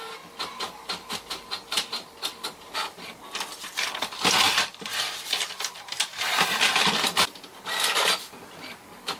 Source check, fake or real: real